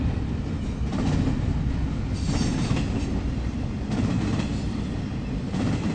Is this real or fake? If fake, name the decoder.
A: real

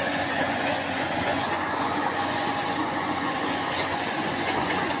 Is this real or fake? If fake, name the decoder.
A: fake, vocoder, Vocos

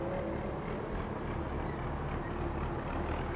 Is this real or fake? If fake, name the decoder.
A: real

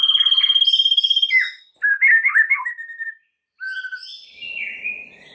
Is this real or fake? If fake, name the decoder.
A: real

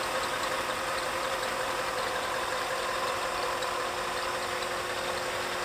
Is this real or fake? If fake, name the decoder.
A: real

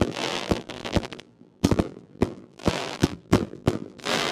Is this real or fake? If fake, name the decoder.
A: fake, vocoder, BigVGAN v2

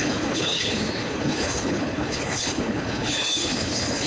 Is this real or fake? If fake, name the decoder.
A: fake, codec, HILCodec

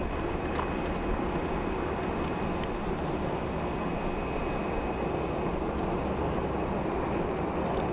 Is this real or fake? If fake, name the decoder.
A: real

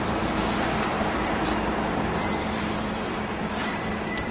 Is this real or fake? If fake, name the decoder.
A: fake, vocoder, BigVGAN v2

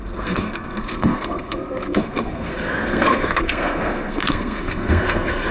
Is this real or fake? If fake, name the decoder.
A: fake, codec, SNAC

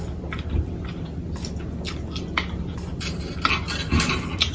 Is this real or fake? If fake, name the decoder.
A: real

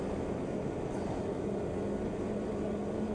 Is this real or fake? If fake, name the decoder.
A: real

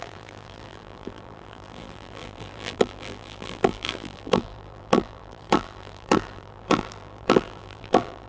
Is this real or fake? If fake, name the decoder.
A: fake, vocoder, BigVGAN v2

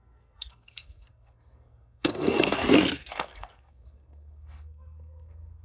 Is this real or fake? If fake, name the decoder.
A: fake, codec, SNAC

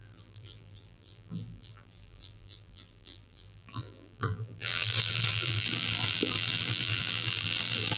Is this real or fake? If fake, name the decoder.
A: fake, vocoder, BigVGAN v2